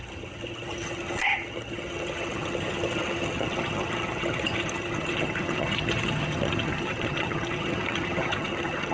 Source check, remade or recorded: remade